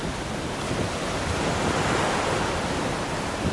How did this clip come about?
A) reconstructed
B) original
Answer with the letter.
A